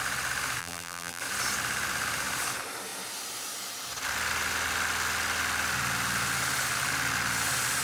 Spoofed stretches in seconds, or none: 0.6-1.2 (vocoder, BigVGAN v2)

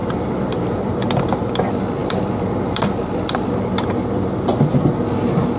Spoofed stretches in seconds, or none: 0.0-1.3 (vocoder, BigVGAN v2); 2.0-3.4

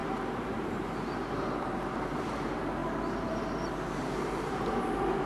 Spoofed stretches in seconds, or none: 0.0-2.8 (vocoder, BigVGAN v2); 3.7-5.3

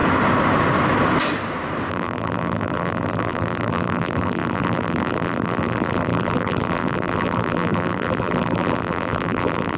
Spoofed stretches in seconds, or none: 1.9-9.8 (vocoder, BigVGAN v2)

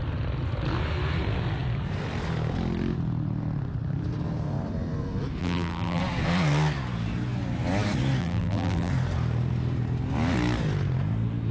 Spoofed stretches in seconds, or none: 5.4-6.0 (vocoder, BigVGAN v2); 8.2-8.9

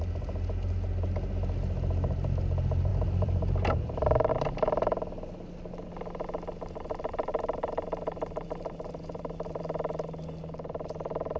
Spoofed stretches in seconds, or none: 2.9-4.3 (vocoder, BigVGAN v2); 7.3-9.6